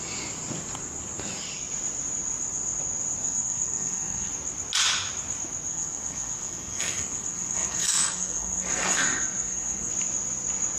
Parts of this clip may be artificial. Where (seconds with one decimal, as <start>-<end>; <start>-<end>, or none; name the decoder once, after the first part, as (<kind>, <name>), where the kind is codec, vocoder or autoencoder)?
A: 3.2-4.3 (codec, SNAC); 5.7-9.9